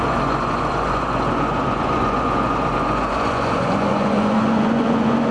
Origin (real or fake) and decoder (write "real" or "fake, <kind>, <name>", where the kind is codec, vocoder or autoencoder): fake, vocoder, Vocos